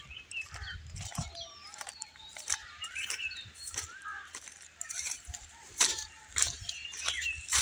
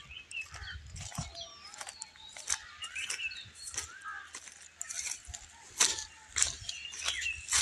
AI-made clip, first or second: first